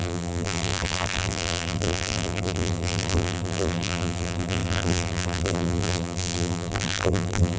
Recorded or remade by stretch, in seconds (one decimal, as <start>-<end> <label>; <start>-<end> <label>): 0.0-7.6 remade

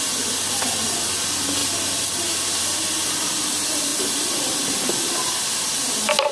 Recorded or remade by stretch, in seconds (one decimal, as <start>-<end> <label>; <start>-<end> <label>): 0.0-3.9 recorded; 3.9-4.6 remade; 4.6-6.3 recorded

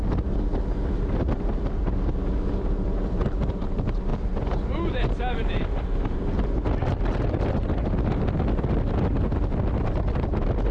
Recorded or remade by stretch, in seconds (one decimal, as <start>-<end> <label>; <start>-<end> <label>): 0.0-10.7 recorded

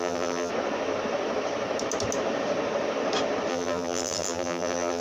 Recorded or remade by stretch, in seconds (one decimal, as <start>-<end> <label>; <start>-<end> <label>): 0.0-0.5 remade; 0.5-3.5 recorded; 3.5-5.0 remade

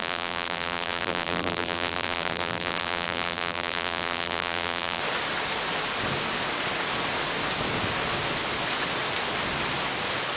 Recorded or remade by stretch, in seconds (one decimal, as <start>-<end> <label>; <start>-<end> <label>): 0.0-5.0 remade; 5.0-10.4 recorded

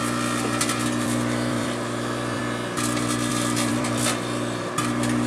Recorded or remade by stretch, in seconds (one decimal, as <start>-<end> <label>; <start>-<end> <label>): 0.0-2.4 remade; 2.4-3.3 recorded; 3.3-5.3 remade

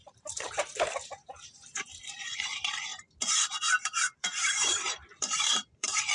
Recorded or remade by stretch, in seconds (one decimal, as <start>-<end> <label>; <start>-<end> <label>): 0.0-2.9 remade; 2.9-3.8 recorded; 3.8-6.1 remade